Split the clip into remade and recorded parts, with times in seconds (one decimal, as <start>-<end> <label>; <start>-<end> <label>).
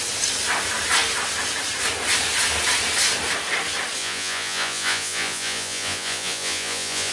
0.0-4.0 recorded; 4.0-7.1 remade